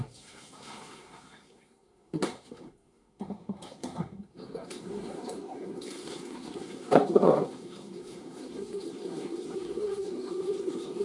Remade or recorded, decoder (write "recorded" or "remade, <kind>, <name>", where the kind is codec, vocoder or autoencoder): remade, codec, SNAC